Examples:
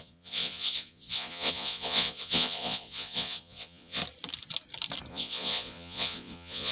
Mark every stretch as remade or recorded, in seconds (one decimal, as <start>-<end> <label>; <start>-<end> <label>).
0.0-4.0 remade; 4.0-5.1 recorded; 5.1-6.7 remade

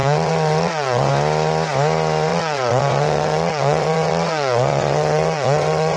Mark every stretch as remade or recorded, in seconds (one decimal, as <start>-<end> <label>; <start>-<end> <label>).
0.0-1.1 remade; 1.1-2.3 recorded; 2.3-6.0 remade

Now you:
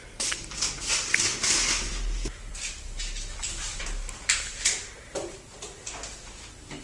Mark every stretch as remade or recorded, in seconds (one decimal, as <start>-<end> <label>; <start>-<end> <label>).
0.0-1.3 recorded; 1.3-5.4 remade; 5.4-6.8 recorded